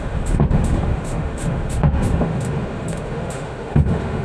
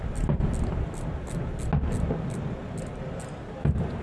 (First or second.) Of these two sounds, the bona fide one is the second